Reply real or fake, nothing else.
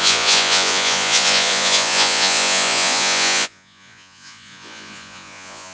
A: fake